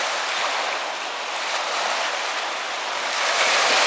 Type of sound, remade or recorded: recorded